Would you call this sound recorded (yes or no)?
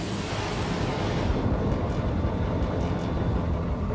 no